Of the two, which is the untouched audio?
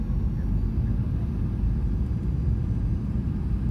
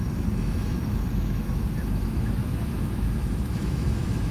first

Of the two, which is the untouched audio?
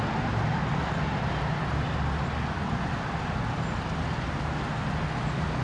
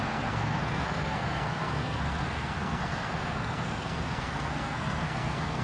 first